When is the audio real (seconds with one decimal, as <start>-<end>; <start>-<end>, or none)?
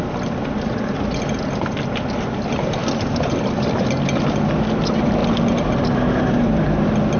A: 0.0-7.2